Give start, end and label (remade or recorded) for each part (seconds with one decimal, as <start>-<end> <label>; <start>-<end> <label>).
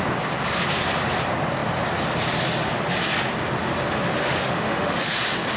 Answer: 0.0-4.2 recorded; 4.2-5.1 remade; 5.1-5.6 recorded